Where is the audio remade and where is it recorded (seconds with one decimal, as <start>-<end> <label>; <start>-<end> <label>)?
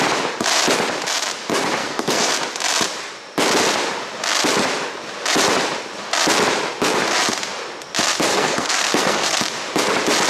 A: 0.0-1.8 recorded; 1.8-2.3 remade; 2.3-8.3 recorded; 8.3-9.4 remade; 9.4-10.3 recorded